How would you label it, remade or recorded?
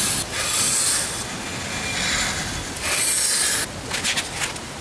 recorded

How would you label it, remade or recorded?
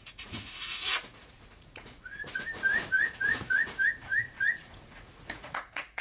remade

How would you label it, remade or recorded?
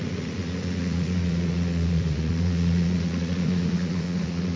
remade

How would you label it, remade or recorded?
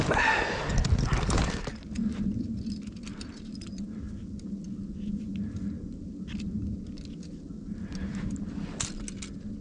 recorded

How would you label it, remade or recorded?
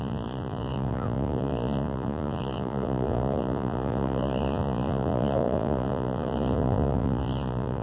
remade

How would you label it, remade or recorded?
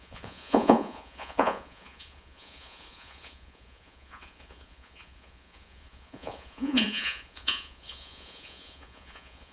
remade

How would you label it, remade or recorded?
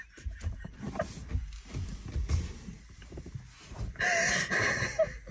recorded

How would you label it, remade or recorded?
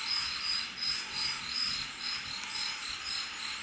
recorded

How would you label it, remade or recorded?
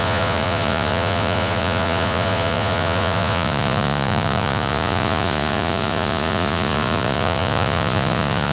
remade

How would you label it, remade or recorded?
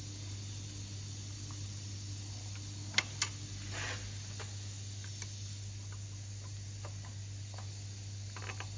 recorded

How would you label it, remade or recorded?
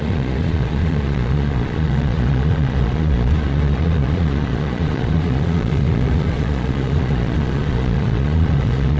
remade